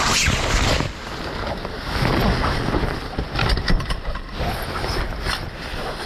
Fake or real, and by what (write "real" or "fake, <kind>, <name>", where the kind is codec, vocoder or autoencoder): real